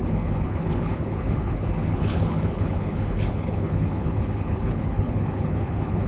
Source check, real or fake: fake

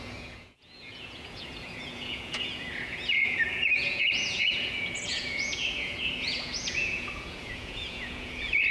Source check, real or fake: fake